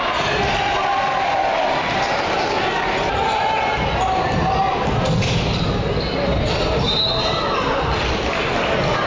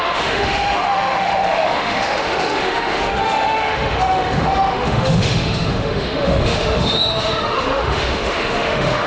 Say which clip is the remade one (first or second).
second